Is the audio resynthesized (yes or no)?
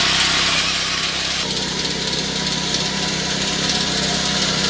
no